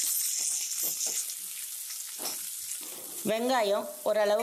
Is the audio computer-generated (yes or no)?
no